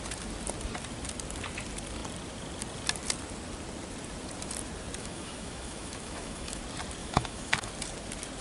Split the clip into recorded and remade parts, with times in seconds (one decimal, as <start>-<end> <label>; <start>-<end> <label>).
0.0-5.0 recorded; 5.0-6.6 remade; 6.6-7.0 recorded; 7.0-7.7 remade; 7.7-8.4 recorded